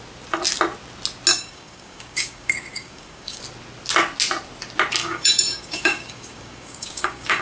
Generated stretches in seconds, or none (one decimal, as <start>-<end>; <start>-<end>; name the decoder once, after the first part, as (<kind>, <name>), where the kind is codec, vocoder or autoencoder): 1.3-3.4 (codec, DAC); 5.0-7.4